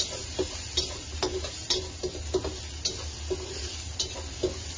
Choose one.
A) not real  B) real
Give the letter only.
B